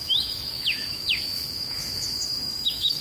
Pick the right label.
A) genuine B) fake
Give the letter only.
B